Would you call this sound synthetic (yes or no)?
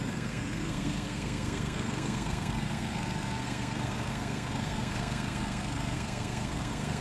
yes